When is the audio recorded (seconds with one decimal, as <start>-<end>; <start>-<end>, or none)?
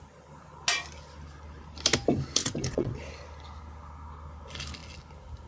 0.0-2.4; 2.9-5.5